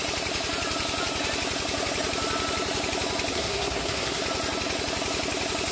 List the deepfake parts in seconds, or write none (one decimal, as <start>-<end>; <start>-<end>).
3.3-4.2